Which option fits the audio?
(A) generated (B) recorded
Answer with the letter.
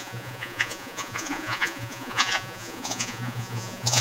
A